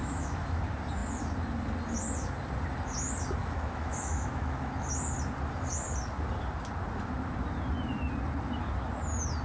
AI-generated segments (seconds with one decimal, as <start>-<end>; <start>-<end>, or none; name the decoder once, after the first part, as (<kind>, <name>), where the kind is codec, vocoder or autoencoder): 0.0-0.6 (autoencoder, DAC-VAE); 3.4-4.7